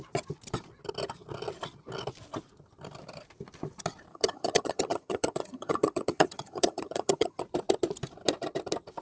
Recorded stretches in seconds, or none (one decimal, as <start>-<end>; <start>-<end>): 0.0-4.1; 7.4-9.0